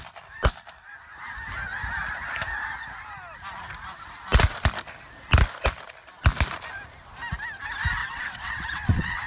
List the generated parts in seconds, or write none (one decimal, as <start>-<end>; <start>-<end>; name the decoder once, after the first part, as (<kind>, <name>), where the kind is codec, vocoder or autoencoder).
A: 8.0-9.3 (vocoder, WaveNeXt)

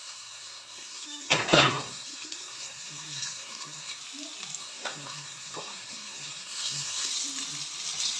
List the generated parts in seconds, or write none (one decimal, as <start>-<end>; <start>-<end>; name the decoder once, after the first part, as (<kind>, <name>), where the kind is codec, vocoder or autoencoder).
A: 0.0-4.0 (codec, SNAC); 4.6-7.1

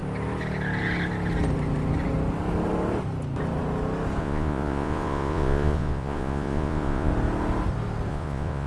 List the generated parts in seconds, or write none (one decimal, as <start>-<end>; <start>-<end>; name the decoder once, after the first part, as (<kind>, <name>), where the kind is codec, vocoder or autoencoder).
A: 4.2-7.1 (vocoder, Vocos); 8.1-8.7